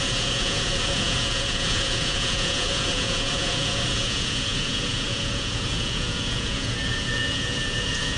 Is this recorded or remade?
remade